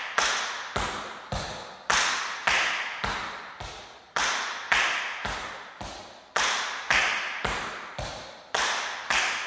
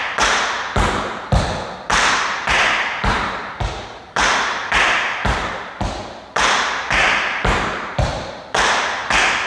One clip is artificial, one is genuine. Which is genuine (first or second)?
first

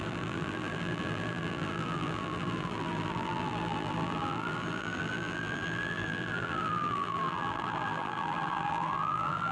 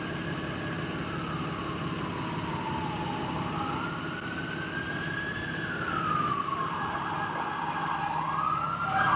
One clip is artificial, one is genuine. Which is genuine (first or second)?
second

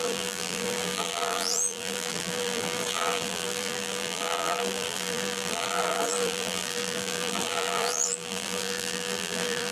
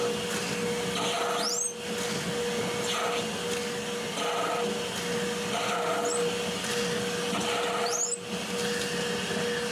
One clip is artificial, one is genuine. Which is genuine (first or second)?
second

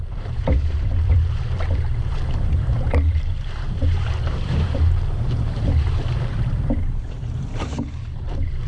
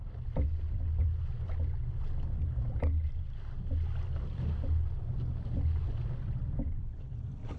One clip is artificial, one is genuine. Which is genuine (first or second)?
second